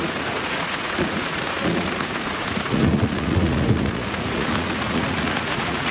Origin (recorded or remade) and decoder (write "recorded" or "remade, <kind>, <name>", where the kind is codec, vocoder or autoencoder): remade, vocoder, Vocos